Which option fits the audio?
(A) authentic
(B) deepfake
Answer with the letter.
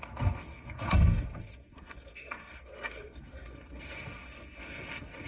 B